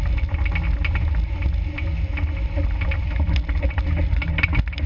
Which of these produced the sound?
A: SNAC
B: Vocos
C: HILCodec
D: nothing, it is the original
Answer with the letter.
D